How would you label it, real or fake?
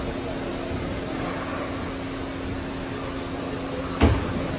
real